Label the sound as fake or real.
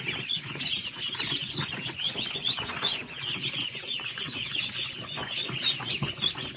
fake